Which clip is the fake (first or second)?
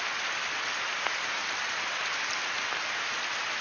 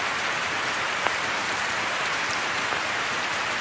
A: second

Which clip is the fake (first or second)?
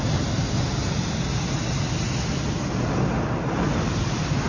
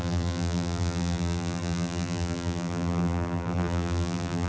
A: second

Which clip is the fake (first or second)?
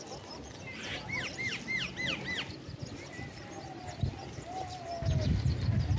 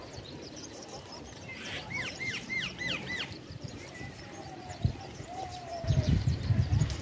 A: second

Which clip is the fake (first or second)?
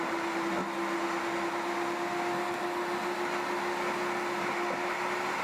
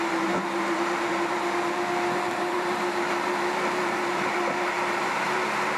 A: second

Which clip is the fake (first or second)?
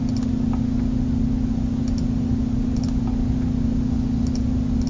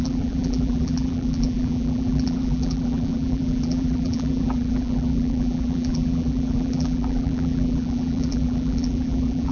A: second